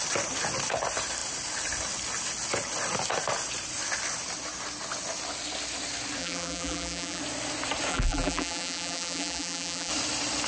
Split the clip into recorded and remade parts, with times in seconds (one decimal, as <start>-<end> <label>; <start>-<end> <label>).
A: 0.0-6.2 recorded; 6.2-7.2 remade; 7.2-7.9 recorded; 7.9-9.9 remade; 9.9-10.5 recorded